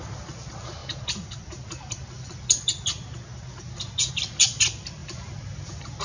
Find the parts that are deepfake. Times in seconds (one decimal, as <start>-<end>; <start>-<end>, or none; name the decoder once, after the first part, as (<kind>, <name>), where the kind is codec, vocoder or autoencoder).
none